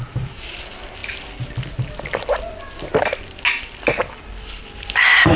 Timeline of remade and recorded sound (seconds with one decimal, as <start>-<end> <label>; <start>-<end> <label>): 0.0-5.4 recorded